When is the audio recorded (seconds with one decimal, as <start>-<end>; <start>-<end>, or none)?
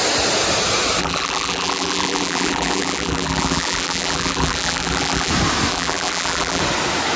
0.0-1.0; 5.3-5.7; 6.6-7.2